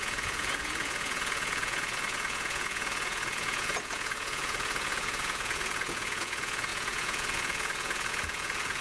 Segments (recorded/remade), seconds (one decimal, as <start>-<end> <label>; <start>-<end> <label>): 0.0-8.8 remade